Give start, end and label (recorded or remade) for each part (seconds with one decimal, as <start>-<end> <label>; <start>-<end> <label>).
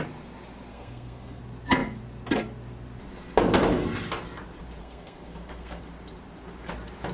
0.0-0.7 recorded; 0.7-1.4 remade; 1.4-4.8 recorded; 4.8-5.8 remade; 5.8-7.1 recorded